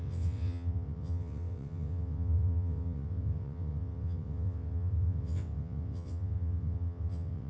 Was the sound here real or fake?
fake